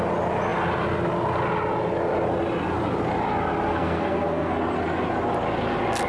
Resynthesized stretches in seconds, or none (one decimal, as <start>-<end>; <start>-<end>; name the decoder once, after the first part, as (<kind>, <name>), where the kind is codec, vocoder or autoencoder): 3.7-4.5 (codec, SNAC)